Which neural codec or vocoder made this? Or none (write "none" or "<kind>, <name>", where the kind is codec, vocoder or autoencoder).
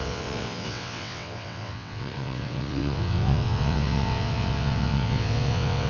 vocoder, WaveNeXt